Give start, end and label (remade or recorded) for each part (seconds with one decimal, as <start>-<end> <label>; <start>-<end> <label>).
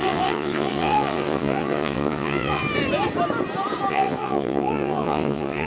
0.0-2.6 remade; 2.6-3.9 recorded; 3.9-5.7 remade